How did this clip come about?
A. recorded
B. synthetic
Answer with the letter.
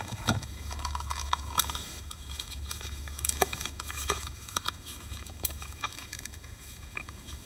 B